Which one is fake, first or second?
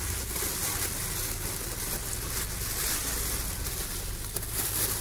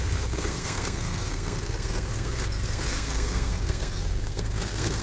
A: second